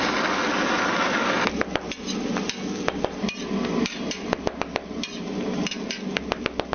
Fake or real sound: real